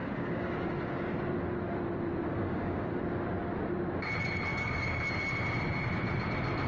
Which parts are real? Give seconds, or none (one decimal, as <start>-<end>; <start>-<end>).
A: 1.2-2.3; 3.0-4.5; 5.0-6.7